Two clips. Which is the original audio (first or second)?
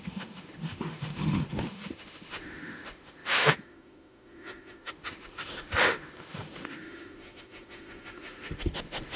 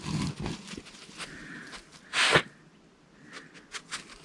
second